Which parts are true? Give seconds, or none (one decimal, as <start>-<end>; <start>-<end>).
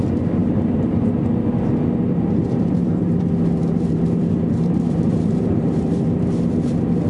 0.0-0.4; 1.1-2.4; 3.2-3.6; 6.4-7.1